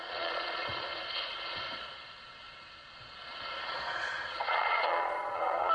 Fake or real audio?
fake